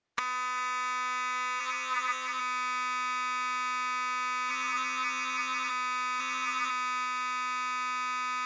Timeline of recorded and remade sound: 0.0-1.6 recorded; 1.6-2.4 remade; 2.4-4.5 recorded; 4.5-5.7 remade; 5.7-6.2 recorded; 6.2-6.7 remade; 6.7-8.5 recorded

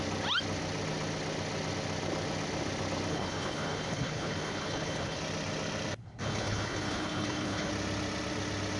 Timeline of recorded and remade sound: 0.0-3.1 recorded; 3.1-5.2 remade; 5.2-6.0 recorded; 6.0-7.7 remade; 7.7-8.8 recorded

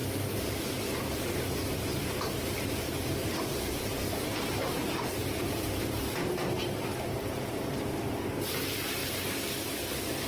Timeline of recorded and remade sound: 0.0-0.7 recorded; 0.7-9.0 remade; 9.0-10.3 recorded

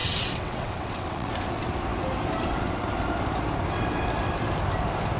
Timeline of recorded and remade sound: 0.0-1.3 remade; 1.3-5.2 recorded